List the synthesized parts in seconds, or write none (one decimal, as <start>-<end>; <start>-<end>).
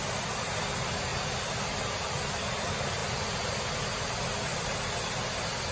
none